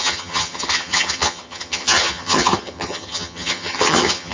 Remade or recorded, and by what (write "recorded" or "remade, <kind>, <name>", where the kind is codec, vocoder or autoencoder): remade, vocoder, HiFi-GAN